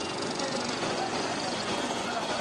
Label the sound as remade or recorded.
remade